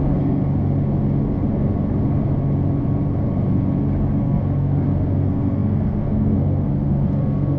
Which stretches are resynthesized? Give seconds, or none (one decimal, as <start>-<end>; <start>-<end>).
0.0-0.4; 4.2-7.6